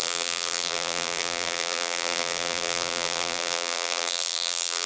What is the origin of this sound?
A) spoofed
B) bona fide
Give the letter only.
A